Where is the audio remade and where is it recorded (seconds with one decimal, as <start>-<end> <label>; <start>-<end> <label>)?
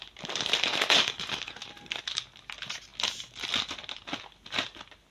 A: 0.0-0.7 recorded; 0.7-1.5 remade; 1.5-5.1 recorded